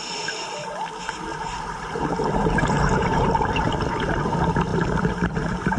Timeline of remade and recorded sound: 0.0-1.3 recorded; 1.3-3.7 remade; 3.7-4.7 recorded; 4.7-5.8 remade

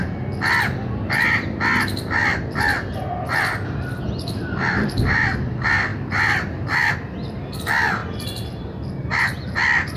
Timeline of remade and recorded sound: 0.0-5.9 recorded; 5.9-6.9 remade; 6.9-10.0 recorded

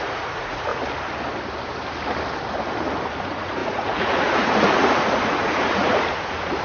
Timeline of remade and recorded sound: 0.0-0.7 remade; 0.7-3.2 recorded; 3.2-6.6 remade

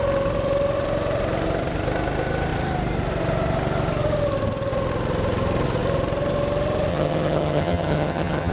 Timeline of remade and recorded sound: 0.0-6.9 recorded; 6.9-8.5 remade

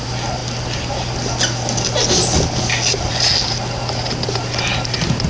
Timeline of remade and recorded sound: 0.0-5.3 recorded